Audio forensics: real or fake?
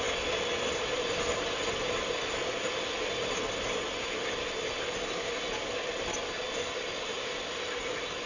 real